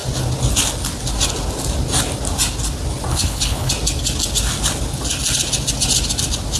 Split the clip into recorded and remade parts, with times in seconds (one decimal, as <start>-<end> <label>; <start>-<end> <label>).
0.0-3.1 recorded; 3.1-3.7 remade; 3.7-6.6 recorded